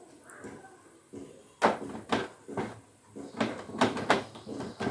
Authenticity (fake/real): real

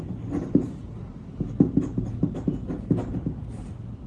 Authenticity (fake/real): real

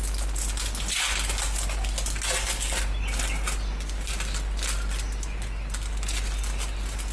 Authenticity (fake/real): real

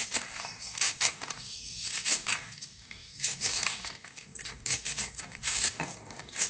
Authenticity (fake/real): fake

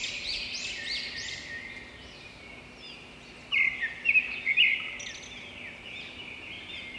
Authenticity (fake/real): real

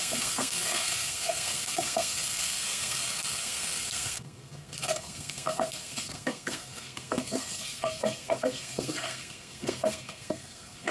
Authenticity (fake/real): fake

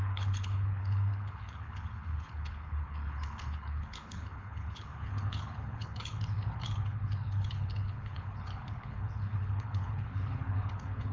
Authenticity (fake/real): fake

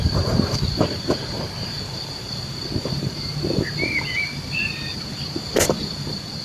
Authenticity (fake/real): fake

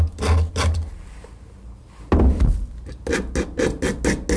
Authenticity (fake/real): real